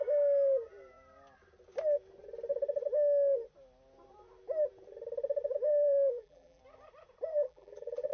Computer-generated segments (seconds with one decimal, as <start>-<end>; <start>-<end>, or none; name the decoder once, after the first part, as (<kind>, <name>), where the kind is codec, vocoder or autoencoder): 5.7-6.6 (vocoder, BigVGAN v2); 7.3-8.1